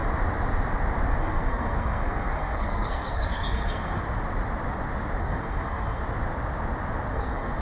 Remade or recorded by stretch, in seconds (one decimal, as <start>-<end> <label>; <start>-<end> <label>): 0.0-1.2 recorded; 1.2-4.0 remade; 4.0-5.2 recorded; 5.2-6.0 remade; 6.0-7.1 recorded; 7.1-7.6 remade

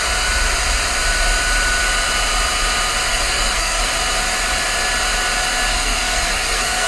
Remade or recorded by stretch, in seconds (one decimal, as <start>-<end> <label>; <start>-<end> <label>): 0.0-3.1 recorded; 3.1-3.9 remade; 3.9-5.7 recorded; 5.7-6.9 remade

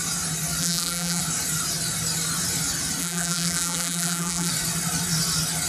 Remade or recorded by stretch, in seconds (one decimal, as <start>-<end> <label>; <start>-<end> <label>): 0.0-0.6 recorded; 0.6-1.2 remade; 1.2-3.0 recorded; 3.0-4.5 remade; 4.5-5.7 recorded

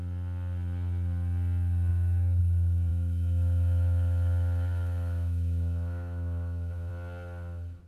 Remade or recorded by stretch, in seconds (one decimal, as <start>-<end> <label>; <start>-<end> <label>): 0.0-1.9 recorded; 1.9-2.4 remade; 2.4-2.9 recorded; 2.9-6.9 remade; 6.9-7.9 recorded

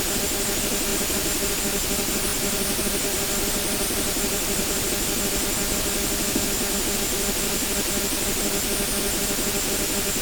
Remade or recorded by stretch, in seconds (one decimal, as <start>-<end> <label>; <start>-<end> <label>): 0.0-0.9 recorded; 0.9-1.5 remade; 1.5-2.3 recorded; 2.3-4.9 remade; 4.9-10.2 recorded

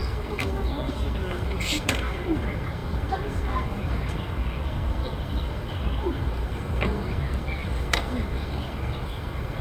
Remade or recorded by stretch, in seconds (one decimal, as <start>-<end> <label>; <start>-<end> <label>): 0.0-9.6 remade